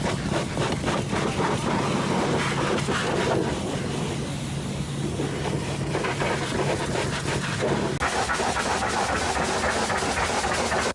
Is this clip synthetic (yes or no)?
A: no